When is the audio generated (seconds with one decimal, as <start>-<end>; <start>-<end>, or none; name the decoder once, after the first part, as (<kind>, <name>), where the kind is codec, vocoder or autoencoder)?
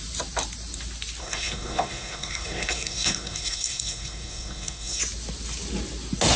1.2-5.0 (codec, SNAC)